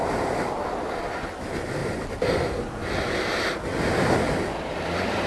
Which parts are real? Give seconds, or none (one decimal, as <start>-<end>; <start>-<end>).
0.0-5.3